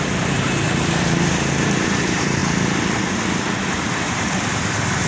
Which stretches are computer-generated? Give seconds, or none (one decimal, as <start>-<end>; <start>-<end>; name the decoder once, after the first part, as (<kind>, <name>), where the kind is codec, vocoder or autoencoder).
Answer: 0.0-2.4 (vocoder, BigVGAN v2); 3.6-5.1